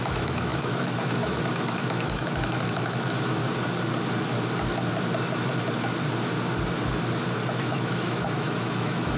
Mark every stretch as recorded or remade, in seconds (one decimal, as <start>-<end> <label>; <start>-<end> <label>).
0.0-3.4 remade; 3.4-7.7 recorded; 7.7-9.2 remade